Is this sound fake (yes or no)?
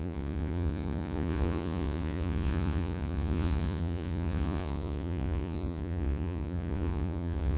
yes